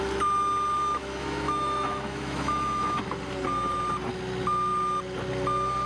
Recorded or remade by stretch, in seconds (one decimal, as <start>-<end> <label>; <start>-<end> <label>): 0.0-1.0 recorded; 1.0-3.0 remade; 3.0-5.9 recorded